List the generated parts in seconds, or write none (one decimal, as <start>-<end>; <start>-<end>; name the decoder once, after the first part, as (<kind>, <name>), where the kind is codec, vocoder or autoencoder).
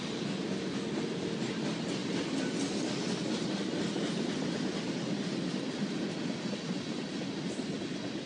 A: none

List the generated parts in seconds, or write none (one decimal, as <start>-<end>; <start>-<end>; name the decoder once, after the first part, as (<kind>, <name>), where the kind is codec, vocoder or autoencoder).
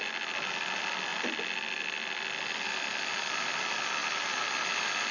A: none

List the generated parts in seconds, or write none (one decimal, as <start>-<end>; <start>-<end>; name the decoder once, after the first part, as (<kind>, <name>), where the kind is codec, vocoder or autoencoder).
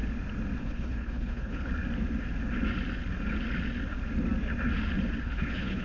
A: 0.6-1.7 (codec, HILCodec); 5.2-5.8